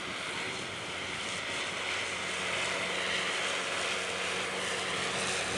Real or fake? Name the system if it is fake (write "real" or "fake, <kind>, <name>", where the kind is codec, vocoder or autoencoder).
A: real